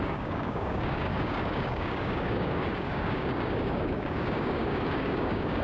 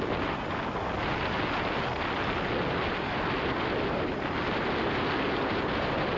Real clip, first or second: second